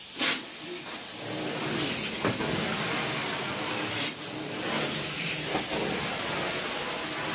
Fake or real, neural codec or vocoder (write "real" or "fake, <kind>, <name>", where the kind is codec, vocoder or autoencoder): real